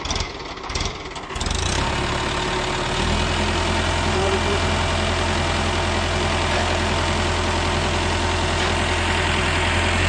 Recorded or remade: recorded